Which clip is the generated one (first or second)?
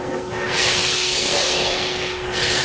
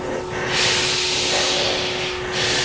first